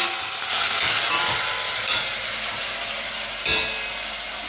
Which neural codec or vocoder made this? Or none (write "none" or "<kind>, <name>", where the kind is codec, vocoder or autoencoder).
none